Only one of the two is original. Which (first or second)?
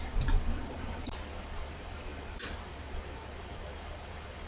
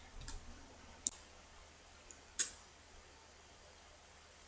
second